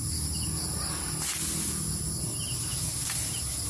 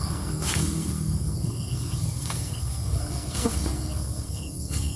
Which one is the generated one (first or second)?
second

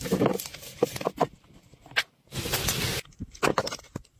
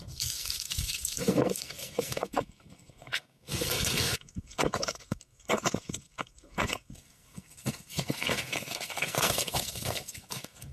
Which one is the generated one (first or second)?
second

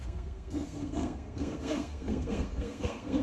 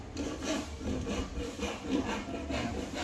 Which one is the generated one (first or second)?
first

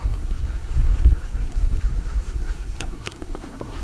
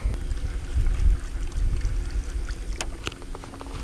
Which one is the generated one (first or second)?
first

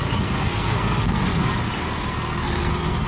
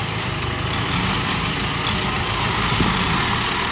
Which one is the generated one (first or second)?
first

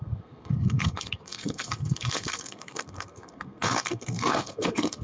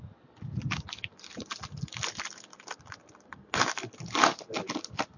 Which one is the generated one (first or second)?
first